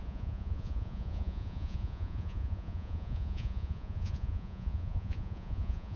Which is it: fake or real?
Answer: fake